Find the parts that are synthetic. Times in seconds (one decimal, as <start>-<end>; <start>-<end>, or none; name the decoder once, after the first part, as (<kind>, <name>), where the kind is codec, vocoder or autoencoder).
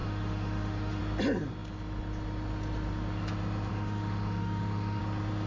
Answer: 0.0-1.0 (autoencoder, DAC-VAE); 3.7-5.0